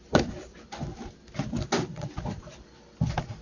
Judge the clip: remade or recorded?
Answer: recorded